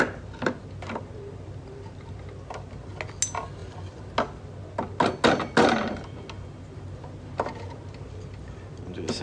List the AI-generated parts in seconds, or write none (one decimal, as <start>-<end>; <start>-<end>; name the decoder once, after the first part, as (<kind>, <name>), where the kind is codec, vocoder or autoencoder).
none